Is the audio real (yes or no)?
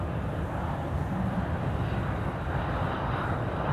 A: yes